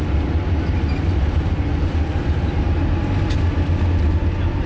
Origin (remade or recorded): recorded